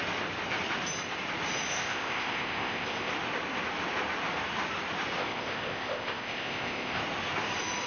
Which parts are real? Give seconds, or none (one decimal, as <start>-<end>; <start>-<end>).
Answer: 0.0-1.7; 3.1-5.2; 7.0-7.9